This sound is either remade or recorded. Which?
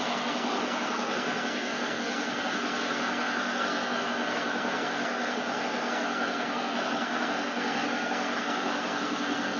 remade